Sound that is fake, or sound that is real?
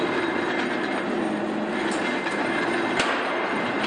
real